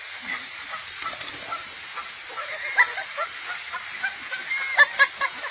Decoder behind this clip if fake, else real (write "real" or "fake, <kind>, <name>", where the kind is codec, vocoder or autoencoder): real